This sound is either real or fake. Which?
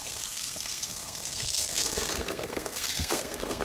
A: fake